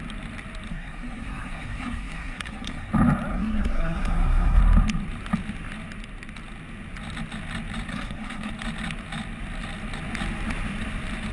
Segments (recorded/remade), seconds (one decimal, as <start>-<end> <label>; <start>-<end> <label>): 0.0-0.7 recorded; 0.7-2.9 remade; 2.9-3.3 recorded; 3.3-4.6 remade; 4.6-7.9 recorded; 7.9-8.5 remade; 8.5-11.3 recorded